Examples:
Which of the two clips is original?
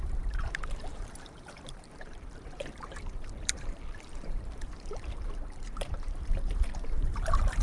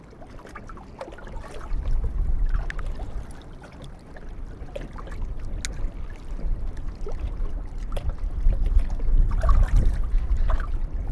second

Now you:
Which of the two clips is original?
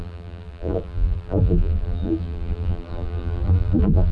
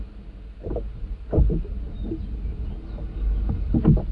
second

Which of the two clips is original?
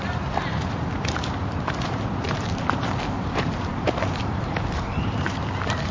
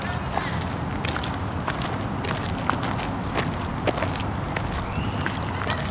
second